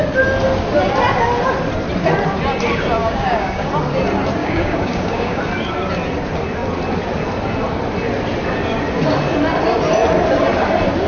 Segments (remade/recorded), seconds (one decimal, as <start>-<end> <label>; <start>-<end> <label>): 0.0-3.0 recorded; 3.0-3.7 remade; 3.7-4.4 recorded; 4.4-5.4 remade; 5.4-11.1 recorded